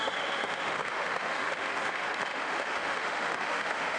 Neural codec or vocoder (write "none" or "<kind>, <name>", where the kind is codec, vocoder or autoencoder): autoencoder, DAC-VAE